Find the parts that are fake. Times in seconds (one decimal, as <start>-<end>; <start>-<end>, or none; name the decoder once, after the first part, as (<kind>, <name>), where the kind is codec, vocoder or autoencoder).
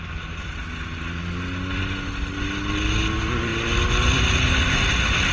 none